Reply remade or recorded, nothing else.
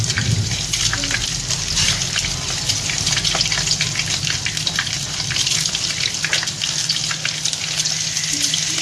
recorded